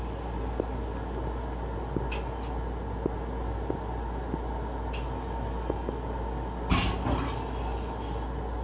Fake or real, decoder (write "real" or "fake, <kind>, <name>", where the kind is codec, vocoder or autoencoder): real